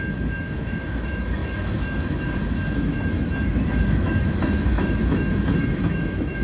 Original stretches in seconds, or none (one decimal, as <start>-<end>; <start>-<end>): none